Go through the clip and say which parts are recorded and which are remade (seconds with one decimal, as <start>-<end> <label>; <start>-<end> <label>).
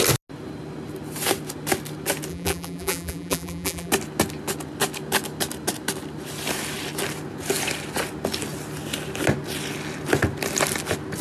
0.0-2.3 recorded; 2.3-3.9 remade; 3.9-11.2 recorded